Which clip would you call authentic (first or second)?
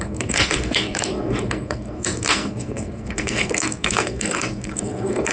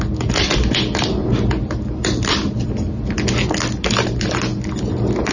second